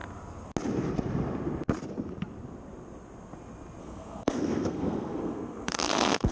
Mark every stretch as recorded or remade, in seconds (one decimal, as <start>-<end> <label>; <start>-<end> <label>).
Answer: 0.0-3.8 recorded; 3.8-6.3 remade